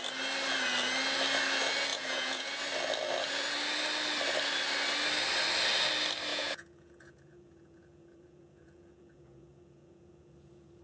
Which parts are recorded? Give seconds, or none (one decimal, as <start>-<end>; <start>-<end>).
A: 0.0-1.9; 2.6-6.3